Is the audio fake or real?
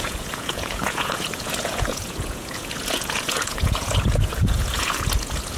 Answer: fake